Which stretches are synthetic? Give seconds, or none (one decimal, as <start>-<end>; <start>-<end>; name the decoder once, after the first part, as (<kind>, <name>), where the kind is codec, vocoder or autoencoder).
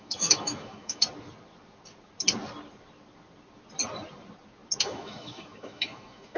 0.0-1.0 (autoencoder, DAC-VAE); 4.8-6.4